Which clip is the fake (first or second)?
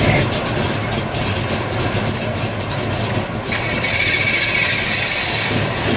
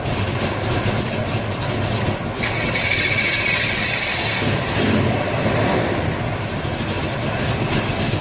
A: second